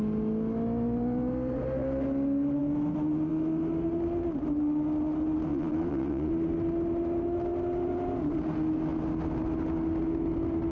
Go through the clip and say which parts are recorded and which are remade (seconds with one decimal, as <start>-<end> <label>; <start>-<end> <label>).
0.0-5.5 recorded; 5.5-6.3 remade; 6.3-10.7 recorded